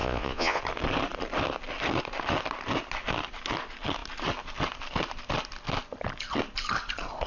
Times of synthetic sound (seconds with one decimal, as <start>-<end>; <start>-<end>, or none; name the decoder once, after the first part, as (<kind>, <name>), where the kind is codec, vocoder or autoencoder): 0.0-0.6 (vocoder, Vocos)